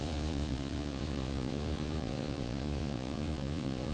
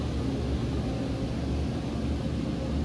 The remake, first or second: first